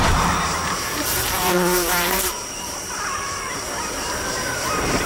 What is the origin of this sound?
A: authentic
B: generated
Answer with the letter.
B